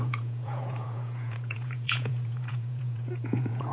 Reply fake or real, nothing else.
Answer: fake